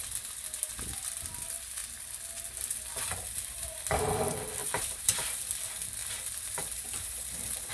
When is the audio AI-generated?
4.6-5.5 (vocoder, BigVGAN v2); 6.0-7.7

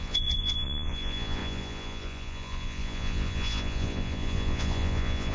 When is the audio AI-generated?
0.0-5.3 (vocoder, Vocos)

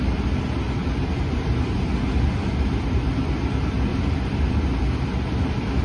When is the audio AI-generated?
0.8-1.3 (vocoder, BigVGAN v2); 3.9-4.6

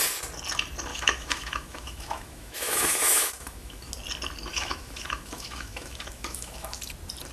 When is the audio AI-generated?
0.9-3.9 (autoencoder, DAC-VAE); 4.5-6.8

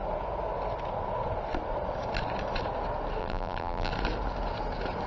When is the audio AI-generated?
3.2-3.9 (vocoder, BigVGAN v2)

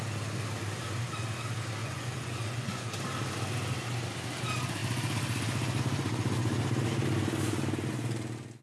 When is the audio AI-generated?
1.8-2.9 (vocoder, Vocos)